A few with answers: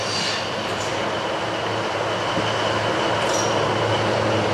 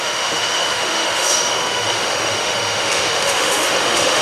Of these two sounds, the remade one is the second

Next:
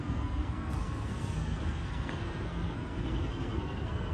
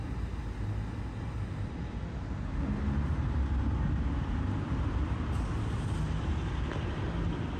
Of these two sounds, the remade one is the first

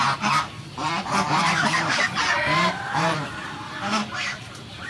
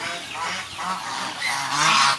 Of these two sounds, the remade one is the first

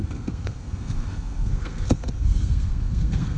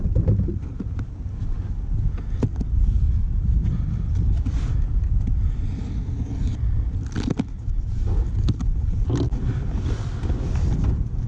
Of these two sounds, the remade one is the first